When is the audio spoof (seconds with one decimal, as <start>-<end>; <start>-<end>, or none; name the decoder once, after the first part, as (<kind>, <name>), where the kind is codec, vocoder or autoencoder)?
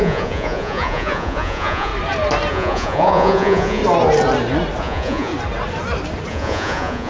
0.0-1.9 (vocoder, Vocos); 2.5-3.8; 4.8-5.3; 6.3-7.1